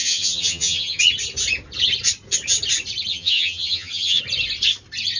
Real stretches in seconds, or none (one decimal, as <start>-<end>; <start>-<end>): 1.0-3.1; 4.2-5.2